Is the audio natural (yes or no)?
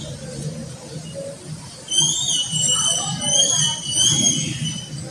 yes